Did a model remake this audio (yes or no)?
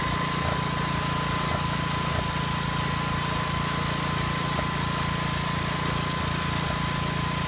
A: no